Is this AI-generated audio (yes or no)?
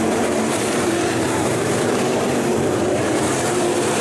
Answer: yes